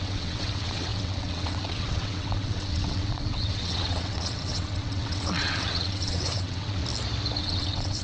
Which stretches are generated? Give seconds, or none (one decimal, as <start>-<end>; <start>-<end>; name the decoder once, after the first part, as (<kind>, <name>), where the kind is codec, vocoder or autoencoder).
0.0-6.8 (vocoder, WaveNeXt); 7.4-8.0